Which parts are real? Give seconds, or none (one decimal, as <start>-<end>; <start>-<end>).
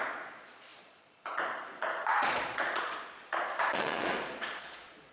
none